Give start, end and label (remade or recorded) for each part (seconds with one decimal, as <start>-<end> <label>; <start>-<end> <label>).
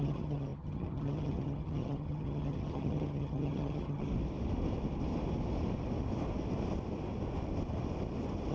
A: 0.0-4.1 remade; 4.1-8.5 recorded